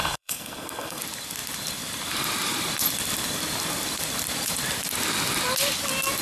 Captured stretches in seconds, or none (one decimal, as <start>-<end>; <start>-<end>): 1.0-6.2